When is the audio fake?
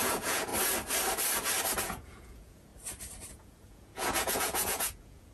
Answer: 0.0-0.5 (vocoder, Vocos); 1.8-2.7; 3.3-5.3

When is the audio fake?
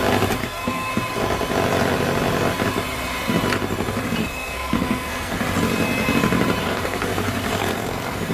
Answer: 0.4-0.9 (codec, SNAC); 4.2-5.4; 6.6-8.3